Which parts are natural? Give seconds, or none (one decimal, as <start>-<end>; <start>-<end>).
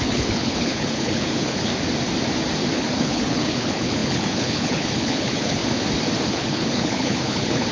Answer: 1.7-2.7; 5.6-6.3